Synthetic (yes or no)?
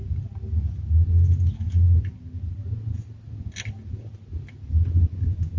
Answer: no